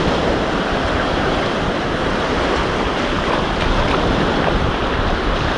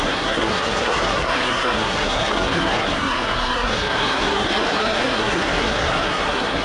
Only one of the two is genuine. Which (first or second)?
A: first